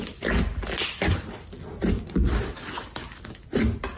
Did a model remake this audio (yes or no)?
no